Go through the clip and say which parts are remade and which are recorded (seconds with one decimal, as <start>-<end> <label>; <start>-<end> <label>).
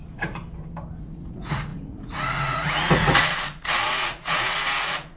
0.0-0.4 remade; 0.4-1.0 recorded; 1.0-5.2 remade